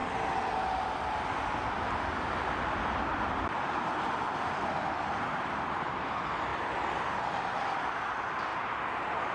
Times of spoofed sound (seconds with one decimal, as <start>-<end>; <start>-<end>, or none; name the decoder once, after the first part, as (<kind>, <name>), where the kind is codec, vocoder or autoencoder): 4.9-8.5 (vocoder, BigVGAN v2)